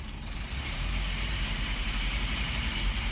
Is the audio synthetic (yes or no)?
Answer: yes